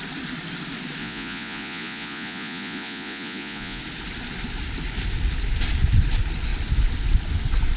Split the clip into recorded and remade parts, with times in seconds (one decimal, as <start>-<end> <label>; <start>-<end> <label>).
0.0-1.0 recorded; 1.0-3.8 remade; 3.8-7.8 recorded